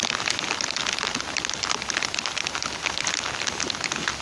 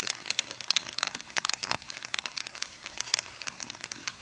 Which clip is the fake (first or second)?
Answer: second